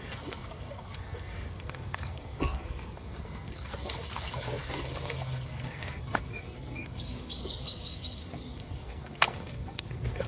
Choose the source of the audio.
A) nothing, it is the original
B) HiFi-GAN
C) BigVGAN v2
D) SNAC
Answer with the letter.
D